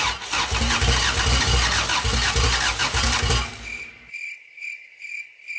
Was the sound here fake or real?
real